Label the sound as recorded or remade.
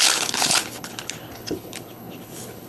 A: remade